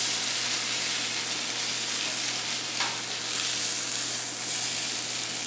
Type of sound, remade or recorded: recorded